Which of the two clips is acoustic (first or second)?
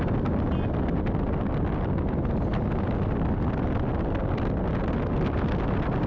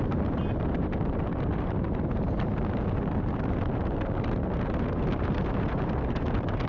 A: first